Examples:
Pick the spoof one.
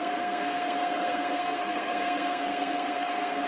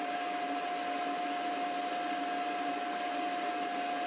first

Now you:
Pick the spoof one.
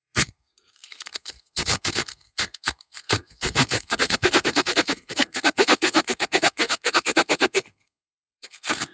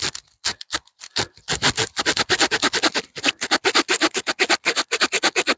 first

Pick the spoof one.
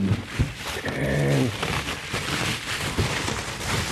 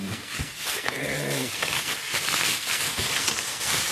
second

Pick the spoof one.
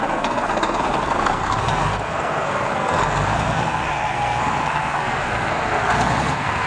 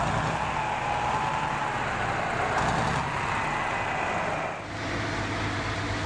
first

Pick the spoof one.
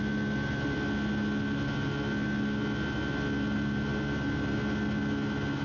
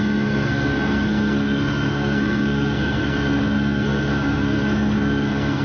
second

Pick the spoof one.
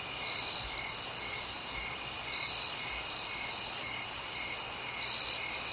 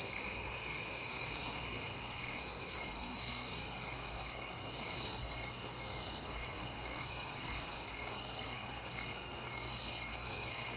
second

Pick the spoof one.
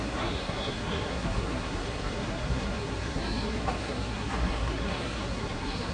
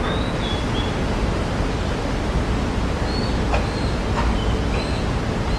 first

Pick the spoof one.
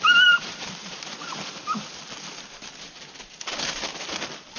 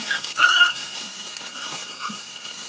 second